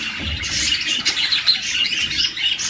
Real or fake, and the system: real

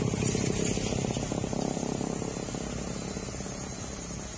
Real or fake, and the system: real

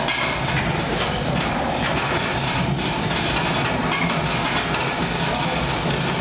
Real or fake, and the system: real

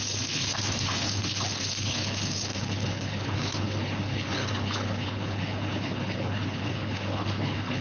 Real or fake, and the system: fake, codec, HILCodec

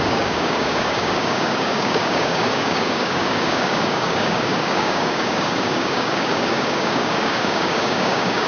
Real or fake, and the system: fake, codec, DAC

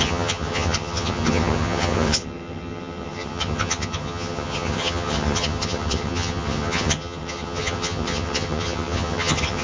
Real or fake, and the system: fake, vocoder, HiFi-GAN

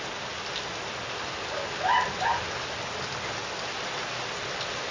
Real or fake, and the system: real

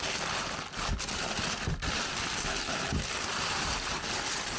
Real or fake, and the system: real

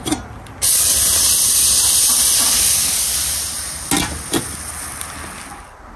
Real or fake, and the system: real